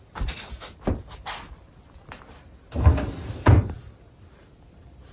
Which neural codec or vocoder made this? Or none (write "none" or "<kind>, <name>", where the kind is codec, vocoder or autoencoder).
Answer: none